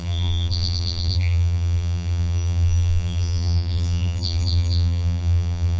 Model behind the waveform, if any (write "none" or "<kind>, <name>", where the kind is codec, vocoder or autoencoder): vocoder, BigVGAN v2